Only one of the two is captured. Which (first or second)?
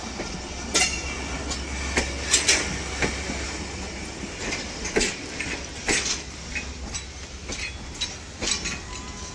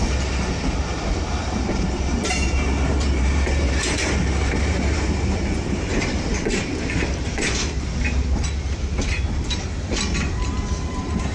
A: first